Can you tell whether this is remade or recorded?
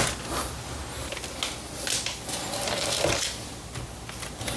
recorded